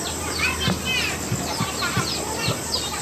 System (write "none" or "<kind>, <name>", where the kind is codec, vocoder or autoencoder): none